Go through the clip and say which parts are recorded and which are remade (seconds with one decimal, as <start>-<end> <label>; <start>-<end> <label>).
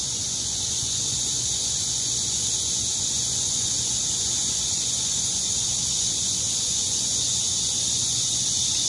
0.0-5.5 remade; 5.5-6.0 recorded; 6.0-8.9 remade